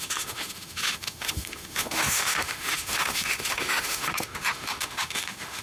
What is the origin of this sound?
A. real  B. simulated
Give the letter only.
B